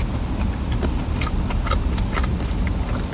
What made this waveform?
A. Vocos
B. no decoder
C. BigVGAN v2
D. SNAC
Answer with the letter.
C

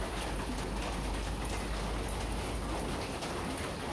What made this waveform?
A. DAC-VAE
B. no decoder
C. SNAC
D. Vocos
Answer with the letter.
B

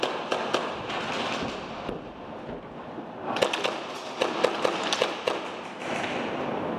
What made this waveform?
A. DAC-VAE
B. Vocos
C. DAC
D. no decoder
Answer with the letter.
D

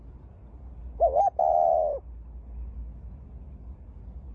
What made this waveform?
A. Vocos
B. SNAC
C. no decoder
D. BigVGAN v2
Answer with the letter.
C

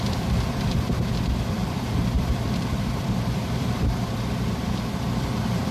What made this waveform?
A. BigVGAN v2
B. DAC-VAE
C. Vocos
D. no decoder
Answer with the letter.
A